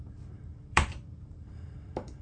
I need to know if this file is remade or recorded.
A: remade